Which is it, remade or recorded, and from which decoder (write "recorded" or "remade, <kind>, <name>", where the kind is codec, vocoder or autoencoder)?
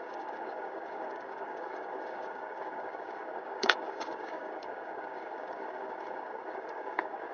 remade, codec, DAC